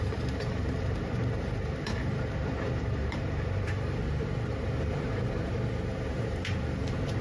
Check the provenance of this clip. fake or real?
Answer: fake